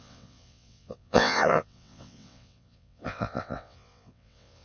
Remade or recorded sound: remade